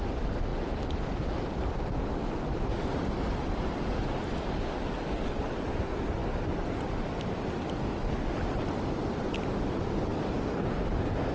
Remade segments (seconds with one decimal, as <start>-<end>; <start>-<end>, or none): none